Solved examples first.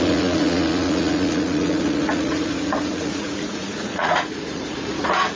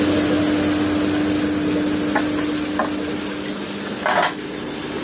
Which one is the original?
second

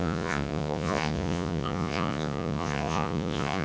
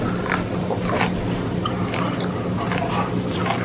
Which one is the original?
second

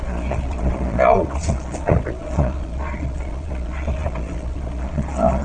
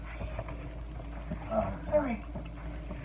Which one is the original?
second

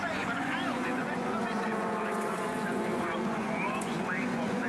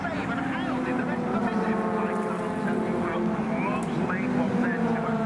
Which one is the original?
second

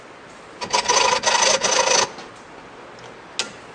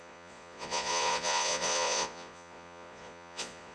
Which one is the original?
first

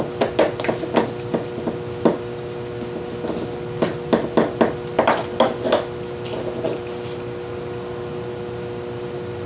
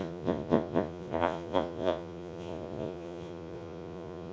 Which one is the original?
first